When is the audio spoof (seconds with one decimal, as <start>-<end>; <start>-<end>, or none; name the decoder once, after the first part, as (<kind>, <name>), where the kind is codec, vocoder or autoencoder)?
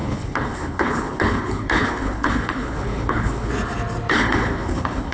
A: 0.0-3.5 (codec, HILCodec); 4.1-5.1